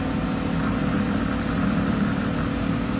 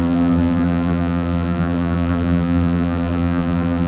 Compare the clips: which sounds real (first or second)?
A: first